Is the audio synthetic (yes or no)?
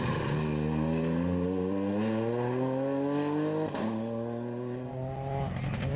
no